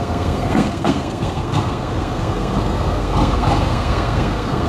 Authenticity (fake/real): fake